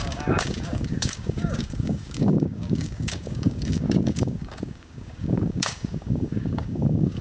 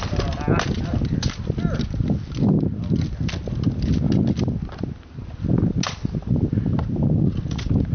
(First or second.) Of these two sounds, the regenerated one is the first